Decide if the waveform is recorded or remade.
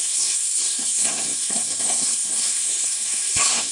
remade